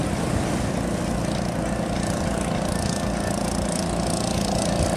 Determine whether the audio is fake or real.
real